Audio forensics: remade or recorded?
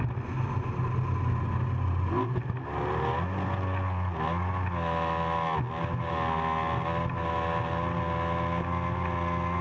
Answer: recorded